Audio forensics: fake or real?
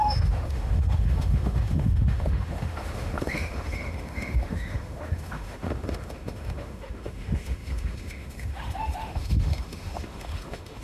fake